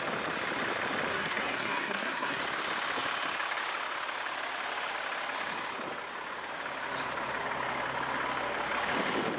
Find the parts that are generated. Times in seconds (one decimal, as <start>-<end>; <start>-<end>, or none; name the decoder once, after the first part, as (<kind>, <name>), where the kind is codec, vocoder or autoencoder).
1.1-2.4 (codec, SNAC)